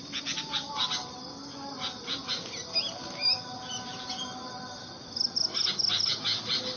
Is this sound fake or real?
real